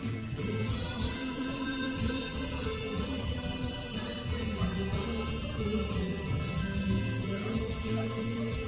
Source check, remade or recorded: remade